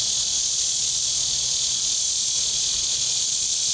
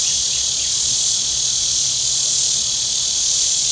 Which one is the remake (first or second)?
second